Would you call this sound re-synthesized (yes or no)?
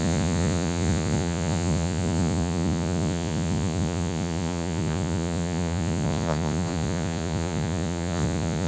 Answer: yes